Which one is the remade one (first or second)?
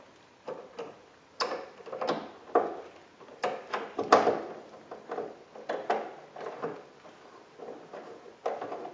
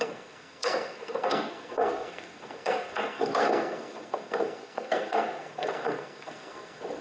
second